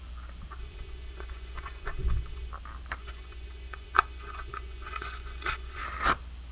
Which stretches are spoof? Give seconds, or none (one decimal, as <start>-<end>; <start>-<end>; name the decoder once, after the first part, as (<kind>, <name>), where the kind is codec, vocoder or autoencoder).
0.6-2.5 (vocoder, Vocos); 3.0-5.8